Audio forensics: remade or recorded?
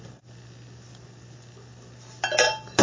recorded